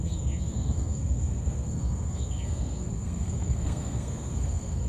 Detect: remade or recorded remade